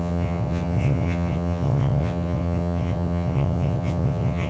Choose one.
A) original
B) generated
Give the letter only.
B